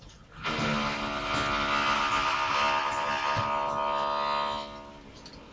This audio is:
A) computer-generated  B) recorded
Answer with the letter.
B